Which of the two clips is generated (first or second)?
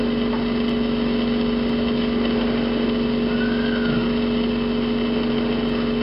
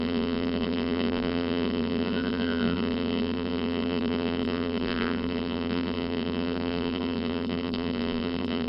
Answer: second